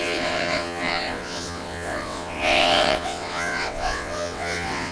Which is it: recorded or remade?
remade